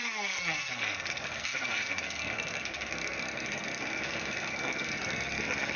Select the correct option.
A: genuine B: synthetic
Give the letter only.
B